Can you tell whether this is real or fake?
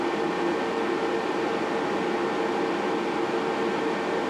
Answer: real